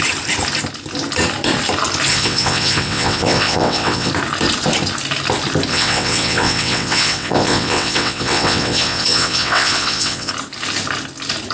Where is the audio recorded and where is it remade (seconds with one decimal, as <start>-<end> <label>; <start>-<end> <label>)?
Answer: 0.0-2.1 recorded; 2.1-4.1 remade; 4.1-5.7 recorded; 5.7-10.3 remade; 10.3-11.5 recorded